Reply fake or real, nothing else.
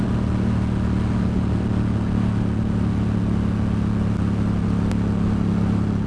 real